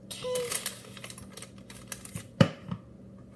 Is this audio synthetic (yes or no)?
no